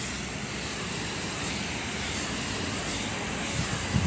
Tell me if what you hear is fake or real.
real